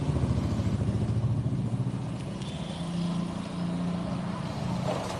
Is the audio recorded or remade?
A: recorded